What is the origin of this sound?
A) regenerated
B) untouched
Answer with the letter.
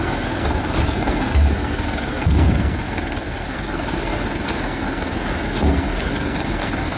A